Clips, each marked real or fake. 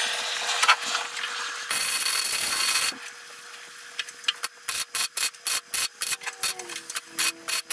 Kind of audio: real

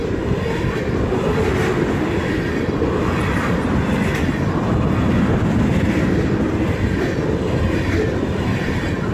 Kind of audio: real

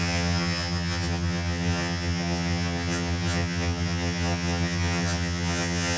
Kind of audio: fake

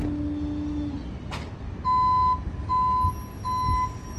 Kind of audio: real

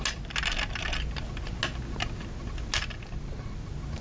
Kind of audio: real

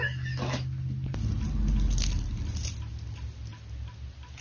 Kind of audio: real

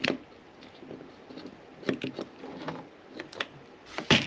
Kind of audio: real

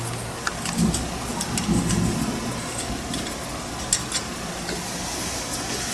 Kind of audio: real